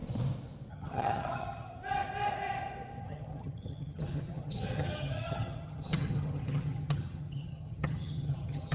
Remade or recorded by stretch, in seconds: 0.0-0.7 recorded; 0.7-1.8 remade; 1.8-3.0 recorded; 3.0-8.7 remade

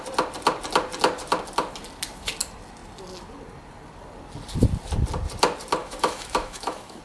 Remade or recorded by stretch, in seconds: 0.0-5.8 recorded; 5.8-7.0 remade